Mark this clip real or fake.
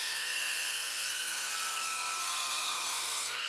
fake